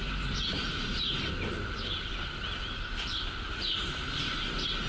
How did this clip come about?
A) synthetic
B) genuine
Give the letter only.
B